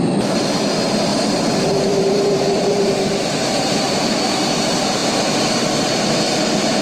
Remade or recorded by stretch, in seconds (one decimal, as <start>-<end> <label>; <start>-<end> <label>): 0.0-1.1 recorded; 1.1-4.2 remade; 4.2-6.8 recorded